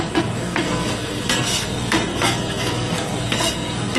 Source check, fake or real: fake